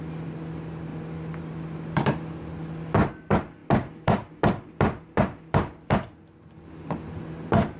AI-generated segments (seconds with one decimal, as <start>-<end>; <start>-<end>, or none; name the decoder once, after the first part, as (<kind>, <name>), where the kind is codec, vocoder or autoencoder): 0.0-0.9 (vocoder, BigVGAN v2); 1.4-7.8